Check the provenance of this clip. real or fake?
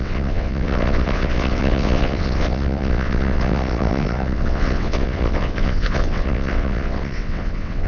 fake